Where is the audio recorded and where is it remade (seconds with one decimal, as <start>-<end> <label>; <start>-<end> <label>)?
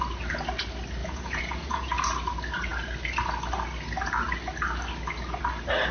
0.0-1.0 recorded; 1.0-1.9 remade; 1.9-5.9 recorded